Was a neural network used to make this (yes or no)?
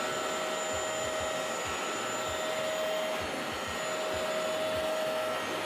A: no